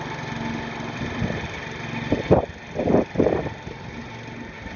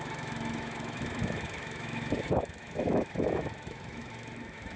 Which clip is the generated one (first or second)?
second